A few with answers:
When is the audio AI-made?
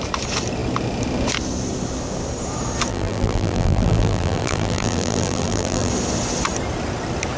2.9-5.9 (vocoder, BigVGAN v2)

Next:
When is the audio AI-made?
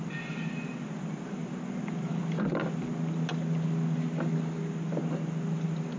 none